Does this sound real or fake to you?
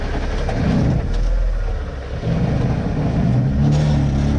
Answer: real